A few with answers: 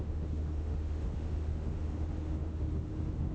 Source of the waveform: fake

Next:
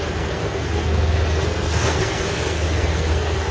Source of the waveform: fake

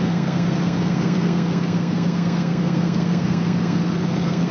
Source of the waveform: fake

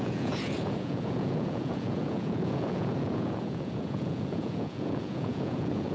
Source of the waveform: fake